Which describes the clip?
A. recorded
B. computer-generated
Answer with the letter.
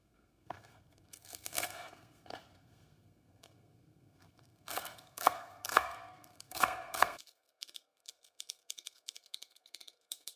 B